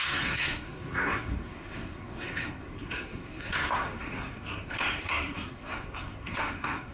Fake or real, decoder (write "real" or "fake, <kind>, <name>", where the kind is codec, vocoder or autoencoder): fake, codec, SNAC